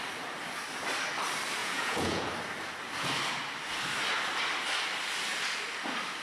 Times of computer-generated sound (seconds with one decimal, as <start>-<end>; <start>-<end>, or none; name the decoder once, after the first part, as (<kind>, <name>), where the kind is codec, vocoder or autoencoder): 1.6-2.3 (vocoder, Vocos)

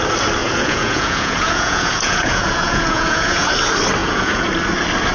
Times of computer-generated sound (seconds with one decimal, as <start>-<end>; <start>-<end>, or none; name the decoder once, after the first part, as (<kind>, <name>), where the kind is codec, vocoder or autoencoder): 0.4-3.5 (vocoder, Vocos); 4.0-4.5

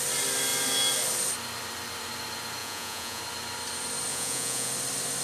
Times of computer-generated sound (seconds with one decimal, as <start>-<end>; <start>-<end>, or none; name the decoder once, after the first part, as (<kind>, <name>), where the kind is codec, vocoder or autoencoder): 2.6-3.2 (vocoder, Vocos); 4.1-4.7

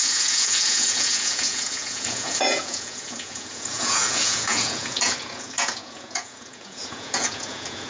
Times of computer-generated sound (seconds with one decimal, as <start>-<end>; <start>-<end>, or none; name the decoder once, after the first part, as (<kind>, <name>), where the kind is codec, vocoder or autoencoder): 0.0-7.9 (vocoder, Vocos)